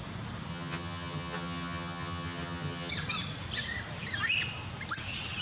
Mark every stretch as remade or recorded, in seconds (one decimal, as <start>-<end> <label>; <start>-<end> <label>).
0.0-0.5 recorded; 0.5-2.9 remade; 2.9-5.4 recorded